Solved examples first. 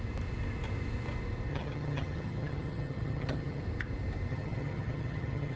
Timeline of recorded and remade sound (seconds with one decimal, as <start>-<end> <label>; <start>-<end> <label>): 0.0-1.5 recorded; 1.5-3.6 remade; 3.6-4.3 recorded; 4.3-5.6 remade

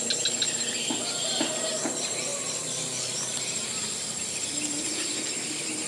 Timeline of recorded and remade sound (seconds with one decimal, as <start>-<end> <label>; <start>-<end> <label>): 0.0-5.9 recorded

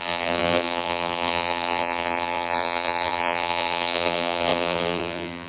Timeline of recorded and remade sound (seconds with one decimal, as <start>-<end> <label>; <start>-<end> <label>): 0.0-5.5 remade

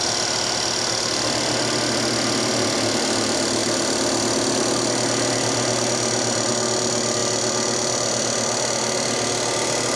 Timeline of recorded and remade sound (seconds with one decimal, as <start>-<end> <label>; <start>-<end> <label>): 0.0-10.0 recorded

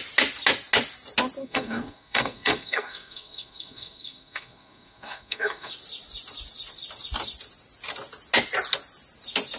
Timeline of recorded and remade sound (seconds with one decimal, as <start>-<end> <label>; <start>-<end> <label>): 0.0-1.4 recorded; 1.4-5.7 remade; 5.7-9.6 recorded

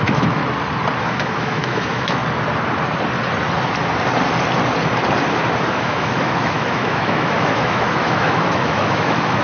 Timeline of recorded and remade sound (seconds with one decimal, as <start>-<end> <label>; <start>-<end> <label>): 0.0-0.4 remade; 0.4-1.0 recorded; 1.0-2.2 remade; 2.2-5.7 recorded; 5.7-9.4 remade